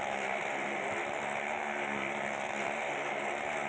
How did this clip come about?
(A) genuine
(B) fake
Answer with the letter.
A